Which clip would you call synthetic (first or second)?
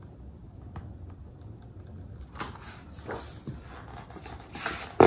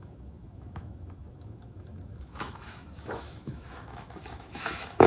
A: second